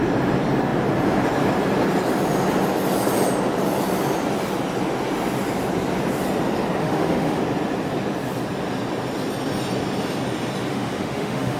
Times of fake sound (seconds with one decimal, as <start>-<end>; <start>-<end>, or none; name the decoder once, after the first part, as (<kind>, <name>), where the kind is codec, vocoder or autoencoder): 6.8-7.4 (autoencoder, DAC-VAE); 10.7-11.6